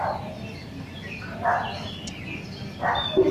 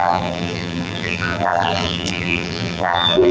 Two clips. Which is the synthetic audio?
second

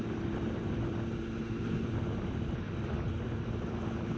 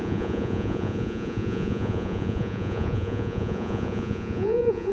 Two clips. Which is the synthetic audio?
second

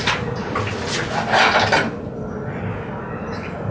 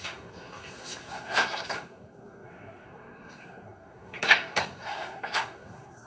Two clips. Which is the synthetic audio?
second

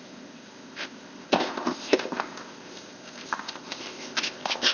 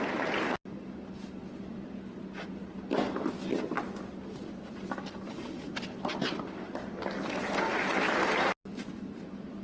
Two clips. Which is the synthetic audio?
first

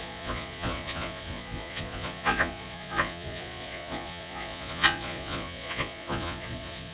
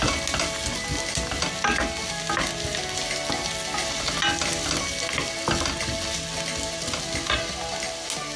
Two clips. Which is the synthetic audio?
first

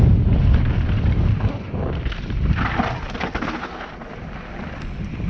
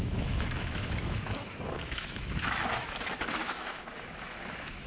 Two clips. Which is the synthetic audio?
second